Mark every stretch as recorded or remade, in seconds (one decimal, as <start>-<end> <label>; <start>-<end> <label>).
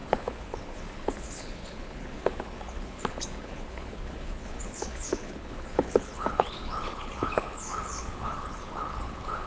0.0-9.5 remade